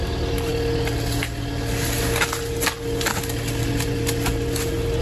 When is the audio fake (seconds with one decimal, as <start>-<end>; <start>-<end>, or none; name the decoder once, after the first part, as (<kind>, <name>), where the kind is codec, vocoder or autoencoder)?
none